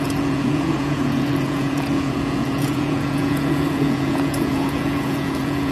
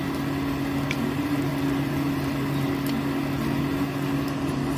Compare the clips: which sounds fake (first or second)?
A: first